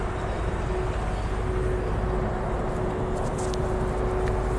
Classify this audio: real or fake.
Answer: real